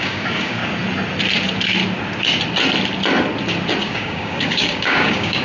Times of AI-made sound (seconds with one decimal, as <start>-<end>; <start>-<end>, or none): 0.0-0.6; 3.8-5.4